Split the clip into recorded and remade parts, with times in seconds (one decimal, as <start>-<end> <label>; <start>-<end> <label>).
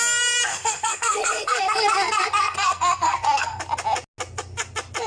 0.0-0.5 recorded; 0.5-3.6 remade; 3.6-5.1 recorded